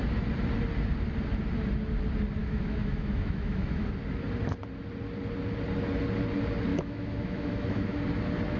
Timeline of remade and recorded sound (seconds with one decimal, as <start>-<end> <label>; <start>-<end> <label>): 0.0-2.4 recorded; 2.4-3.9 remade; 3.9-6.7 recorded; 6.7-8.0 remade; 8.0-8.6 recorded